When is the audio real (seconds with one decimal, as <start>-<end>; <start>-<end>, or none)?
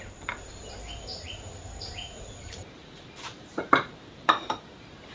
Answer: none